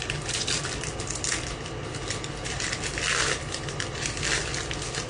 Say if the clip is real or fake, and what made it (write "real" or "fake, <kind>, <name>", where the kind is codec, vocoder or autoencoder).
real